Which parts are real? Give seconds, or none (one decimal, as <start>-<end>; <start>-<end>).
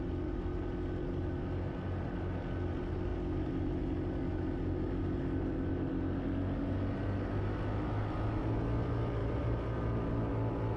0.0-9.2; 9.8-10.8